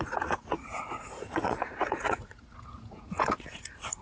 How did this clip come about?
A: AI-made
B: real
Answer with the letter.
A